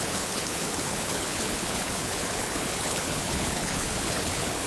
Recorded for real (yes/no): no